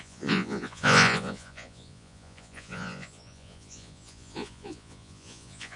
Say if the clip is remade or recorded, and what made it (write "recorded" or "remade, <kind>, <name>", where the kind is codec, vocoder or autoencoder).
remade, vocoder, Vocos